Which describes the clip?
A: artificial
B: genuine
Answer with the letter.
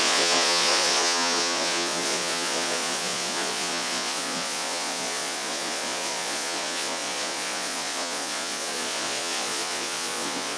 A